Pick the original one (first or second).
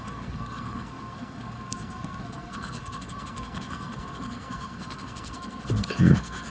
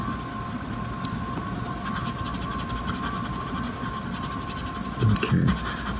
second